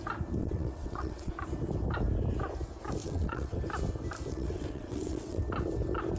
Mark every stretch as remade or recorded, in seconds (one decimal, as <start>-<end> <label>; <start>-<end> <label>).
0.0-0.4 recorded; 0.4-1.3 remade; 1.3-3.0 recorded; 3.0-3.6 remade; 3.6-4.3 recorded; 4.3-5.4 remade; 5.4-6.2 recorded